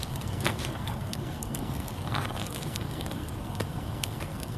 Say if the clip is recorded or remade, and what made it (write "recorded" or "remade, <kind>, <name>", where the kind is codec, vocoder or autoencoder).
remade, codec, SNAC